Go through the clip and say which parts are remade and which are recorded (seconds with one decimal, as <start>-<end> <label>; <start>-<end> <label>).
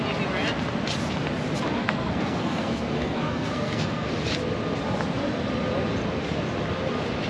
0.0-1.8 recorded; 1.8-4.1 remade; 4.1-7.3 recorded